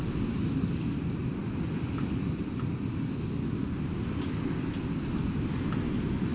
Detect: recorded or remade recorded